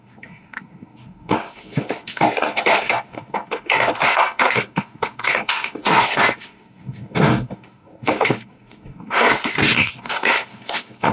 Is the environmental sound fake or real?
fake